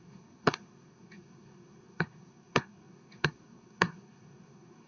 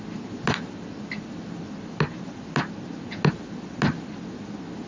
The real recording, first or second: second